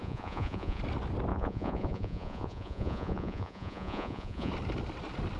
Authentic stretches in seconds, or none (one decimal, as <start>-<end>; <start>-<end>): 0.8-1.3; 4.5-5.4